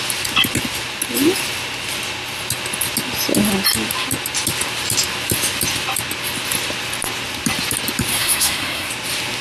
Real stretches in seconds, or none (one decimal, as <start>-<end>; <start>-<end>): 0.0-8.1; 8.9-9.4